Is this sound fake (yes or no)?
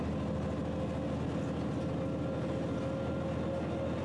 no